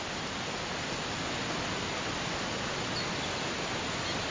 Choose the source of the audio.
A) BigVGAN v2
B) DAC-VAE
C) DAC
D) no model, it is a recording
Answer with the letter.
D